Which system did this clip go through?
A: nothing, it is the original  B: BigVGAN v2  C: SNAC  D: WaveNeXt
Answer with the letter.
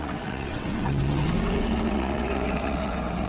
D